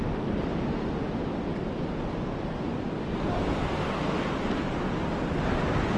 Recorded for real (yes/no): yes